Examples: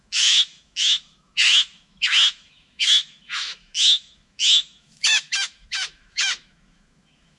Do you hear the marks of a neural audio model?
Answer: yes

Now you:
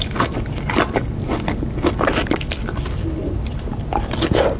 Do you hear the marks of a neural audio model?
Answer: no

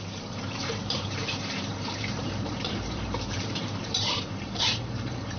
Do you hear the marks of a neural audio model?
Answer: yes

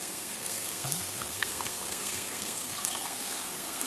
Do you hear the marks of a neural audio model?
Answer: yes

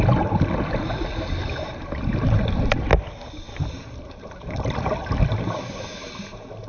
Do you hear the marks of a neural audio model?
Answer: no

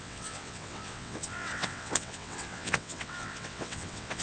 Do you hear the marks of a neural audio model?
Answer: yes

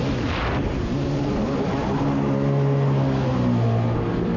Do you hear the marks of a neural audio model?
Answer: no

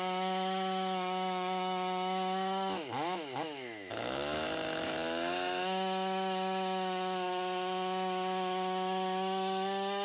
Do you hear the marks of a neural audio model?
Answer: yes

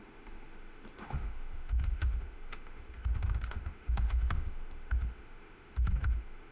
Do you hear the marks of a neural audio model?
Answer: yes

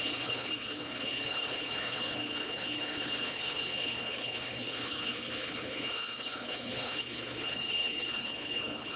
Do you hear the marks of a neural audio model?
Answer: yes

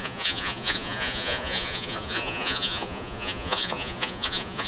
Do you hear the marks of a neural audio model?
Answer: yes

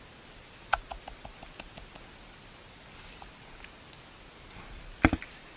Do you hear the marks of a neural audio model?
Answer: no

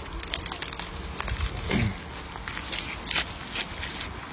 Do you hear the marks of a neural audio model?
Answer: no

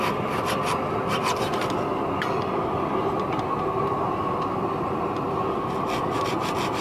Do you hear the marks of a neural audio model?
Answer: no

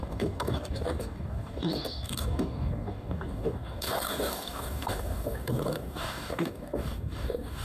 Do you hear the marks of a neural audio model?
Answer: yes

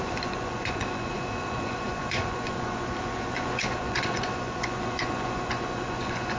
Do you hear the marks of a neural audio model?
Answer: yes